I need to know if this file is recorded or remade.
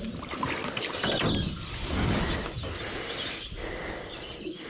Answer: recorded